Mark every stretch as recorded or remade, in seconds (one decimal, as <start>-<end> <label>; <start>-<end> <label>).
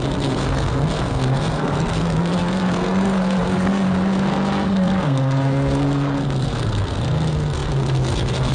0.0-8.5 remade